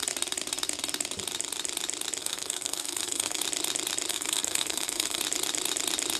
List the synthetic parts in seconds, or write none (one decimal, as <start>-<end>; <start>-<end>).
2.2-3.4; 4.1-5.2